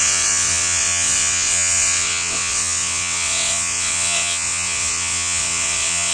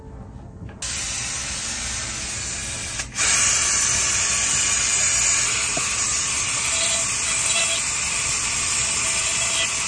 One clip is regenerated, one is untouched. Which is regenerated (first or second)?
first